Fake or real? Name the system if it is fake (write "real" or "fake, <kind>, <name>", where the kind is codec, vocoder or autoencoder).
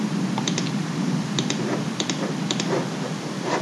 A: fake, vocoder, BigVGAN v2